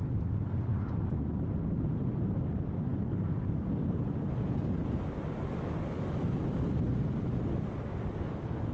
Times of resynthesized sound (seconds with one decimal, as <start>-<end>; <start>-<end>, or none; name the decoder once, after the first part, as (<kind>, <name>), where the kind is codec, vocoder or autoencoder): none